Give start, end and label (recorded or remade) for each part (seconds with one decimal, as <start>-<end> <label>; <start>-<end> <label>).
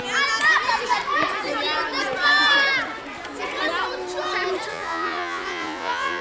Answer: 0.0-4.7 recorded; 4.7-6.2 remade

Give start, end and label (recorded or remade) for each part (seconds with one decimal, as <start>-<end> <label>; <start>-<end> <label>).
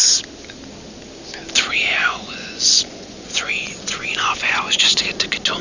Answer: 0.0-2.0 recorded; 2.0-5.0 remade; 5.0-5.6 recorded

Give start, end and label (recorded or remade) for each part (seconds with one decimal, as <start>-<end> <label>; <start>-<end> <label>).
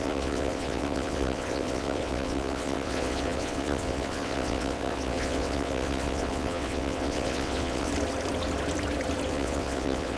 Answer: 0.0-7.9 remade; 7.9-9.3 recorded; 9.3-10.2 remade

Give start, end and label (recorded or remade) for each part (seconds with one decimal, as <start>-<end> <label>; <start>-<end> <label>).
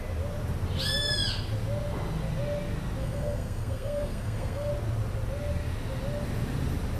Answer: 0.0-3.0 recorded; 3.0-4.7 remade; 4.7-7.0 recorded